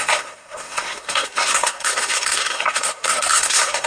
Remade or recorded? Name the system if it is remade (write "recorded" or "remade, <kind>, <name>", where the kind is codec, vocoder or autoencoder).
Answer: remade, codec, SNAC